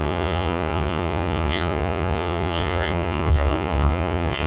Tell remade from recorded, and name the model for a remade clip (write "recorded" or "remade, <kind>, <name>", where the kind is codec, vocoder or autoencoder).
remade, vocoder, Vocos